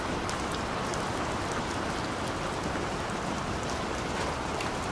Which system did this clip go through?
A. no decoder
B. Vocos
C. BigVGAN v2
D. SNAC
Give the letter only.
A